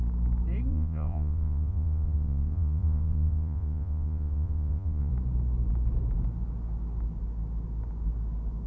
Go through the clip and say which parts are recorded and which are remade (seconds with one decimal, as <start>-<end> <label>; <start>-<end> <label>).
0.0-0.7 recorded; 0.7-5.1 remade; 5.1-8.7 recorded